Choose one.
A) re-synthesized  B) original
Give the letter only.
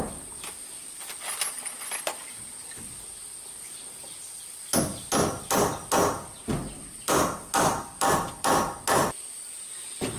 B